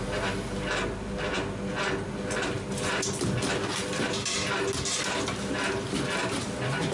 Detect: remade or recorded recorded